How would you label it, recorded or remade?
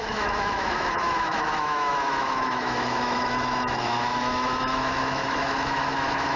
remade